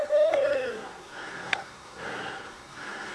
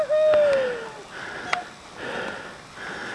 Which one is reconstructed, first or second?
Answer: first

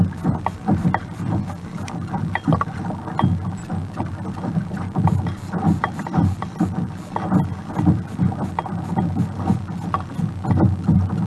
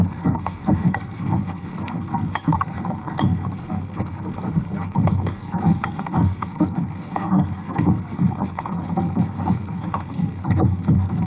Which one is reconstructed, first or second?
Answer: second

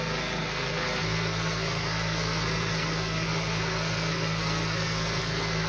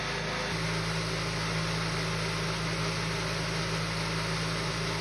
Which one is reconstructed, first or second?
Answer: first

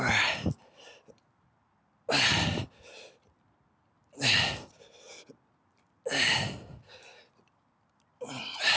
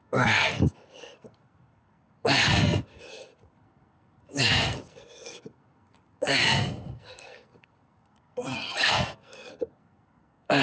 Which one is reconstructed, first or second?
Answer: second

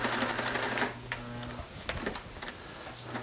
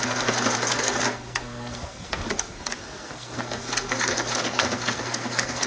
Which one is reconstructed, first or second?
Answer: second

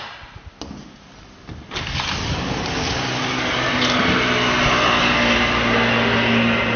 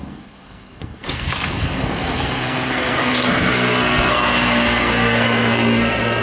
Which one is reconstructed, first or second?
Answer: second